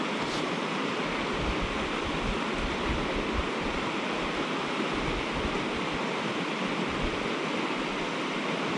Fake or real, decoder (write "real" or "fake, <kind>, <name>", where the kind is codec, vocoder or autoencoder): real